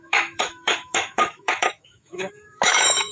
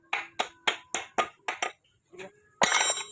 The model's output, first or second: first